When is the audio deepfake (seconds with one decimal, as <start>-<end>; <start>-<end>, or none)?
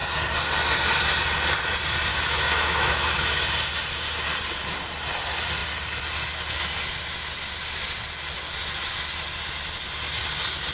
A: 2.1-3.4